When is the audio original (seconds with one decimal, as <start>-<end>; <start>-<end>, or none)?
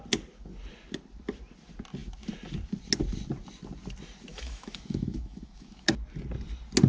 0.0-4.3; 5.9-6.9